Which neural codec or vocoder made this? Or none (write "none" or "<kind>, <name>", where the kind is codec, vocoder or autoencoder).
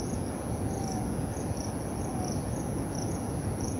none